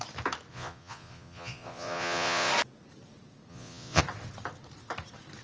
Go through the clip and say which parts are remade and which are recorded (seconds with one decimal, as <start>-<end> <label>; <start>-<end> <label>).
0.0-0.5 recorded; 0.5-2.5 remade; 2.5-3.5 recorded; 3.5-4.0 remade; 4.0-5.4 recorded

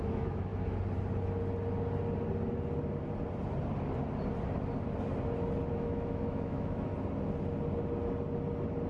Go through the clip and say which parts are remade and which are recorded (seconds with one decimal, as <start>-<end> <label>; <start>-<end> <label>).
0.0-0.5 remade; 0.5-5.7 recorded; 5.7-6.9 remade; 6.9-8.9 recorded

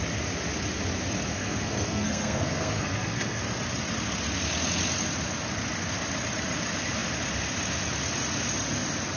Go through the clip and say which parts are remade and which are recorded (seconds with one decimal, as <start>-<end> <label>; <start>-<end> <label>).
0.0-1.3 recorded; 1.3-3.4 remade; 3.4-9.2 recorded

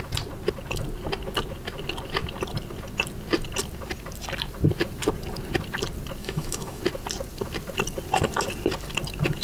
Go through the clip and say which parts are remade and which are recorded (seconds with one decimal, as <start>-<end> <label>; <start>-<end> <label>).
0.0-6.2 recorded; 6.2-6.8 remade; 6.8-9.4 recorded

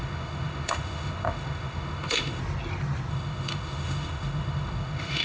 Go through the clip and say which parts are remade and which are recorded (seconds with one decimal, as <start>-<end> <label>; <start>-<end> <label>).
0.0-2.4 remade; 2.4-3.1 recorded; 3.1-5.2 remade

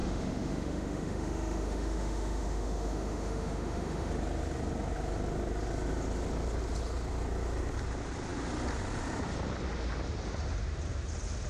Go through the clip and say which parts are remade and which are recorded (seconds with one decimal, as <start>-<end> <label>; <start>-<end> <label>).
0.0-4.1 remade; 4.1-11.5 recorded

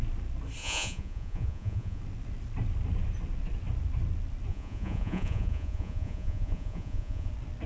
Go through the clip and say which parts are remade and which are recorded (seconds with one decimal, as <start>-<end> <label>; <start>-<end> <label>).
0.0-0.6 recorded; 0.6-2.0 remade; 2.0-4.5 recorded; 4.5-7.3 remade; 7.3-7.7 recorded